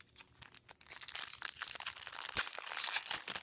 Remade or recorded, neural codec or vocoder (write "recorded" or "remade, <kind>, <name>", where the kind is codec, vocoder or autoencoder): recorded